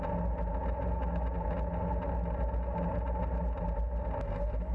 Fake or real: real